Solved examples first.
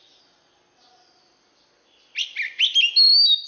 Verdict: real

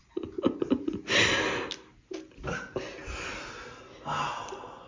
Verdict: real